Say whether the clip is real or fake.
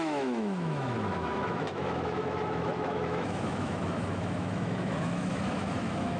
fake